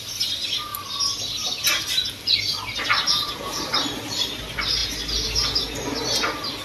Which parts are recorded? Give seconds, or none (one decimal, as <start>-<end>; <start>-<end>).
0.0-6.6